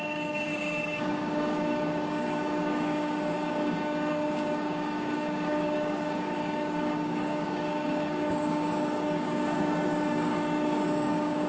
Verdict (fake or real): fake